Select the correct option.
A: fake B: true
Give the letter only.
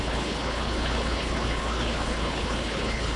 A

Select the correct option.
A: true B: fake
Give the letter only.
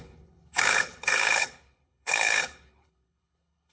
B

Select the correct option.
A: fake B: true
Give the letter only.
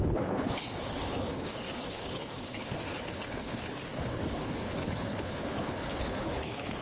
A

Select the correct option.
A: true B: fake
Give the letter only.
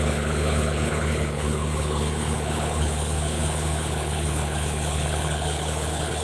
B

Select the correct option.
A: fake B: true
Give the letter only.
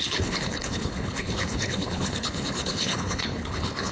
A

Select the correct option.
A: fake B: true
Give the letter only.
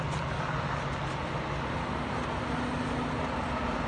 B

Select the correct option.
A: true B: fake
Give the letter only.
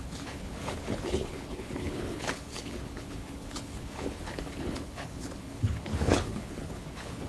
B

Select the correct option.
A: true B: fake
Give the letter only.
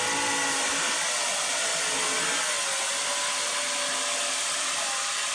A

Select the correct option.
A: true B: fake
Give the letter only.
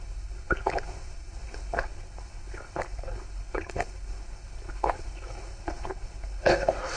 B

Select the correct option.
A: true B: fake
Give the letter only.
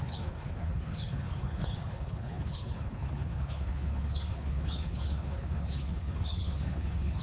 B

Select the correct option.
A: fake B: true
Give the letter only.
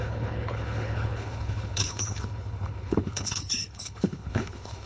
A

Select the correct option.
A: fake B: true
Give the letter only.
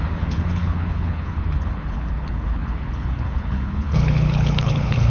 A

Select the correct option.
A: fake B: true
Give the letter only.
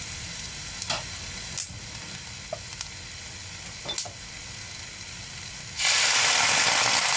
B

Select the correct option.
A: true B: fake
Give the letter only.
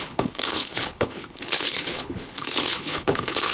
B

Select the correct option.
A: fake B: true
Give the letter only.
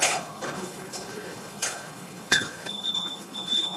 A